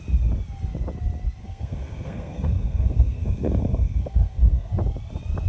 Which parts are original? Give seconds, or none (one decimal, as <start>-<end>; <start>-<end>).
0.0-1.4; 4.7-5.5